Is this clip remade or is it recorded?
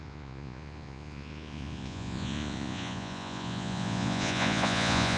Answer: remade